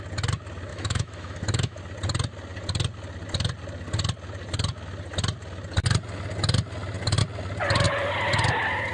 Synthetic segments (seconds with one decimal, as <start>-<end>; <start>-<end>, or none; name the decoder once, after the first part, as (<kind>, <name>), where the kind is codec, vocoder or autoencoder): 0.7-1.8 (autoencoder, DAC-VAE)